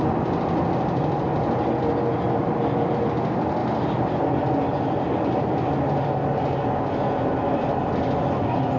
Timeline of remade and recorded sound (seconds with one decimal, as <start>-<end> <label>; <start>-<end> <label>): 0.0-8.8 recorded